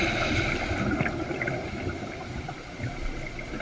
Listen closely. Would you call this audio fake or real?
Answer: real